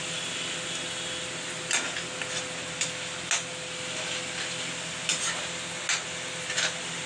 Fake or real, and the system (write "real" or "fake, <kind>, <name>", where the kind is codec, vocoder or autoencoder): real